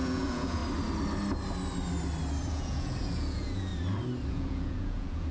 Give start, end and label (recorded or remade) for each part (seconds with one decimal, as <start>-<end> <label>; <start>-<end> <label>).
0.0-0.6 remade; 0.6-2.5 recorded; 2.5-3.7 remade; 3.7-4.3 recorded; 4.3-5.3 remade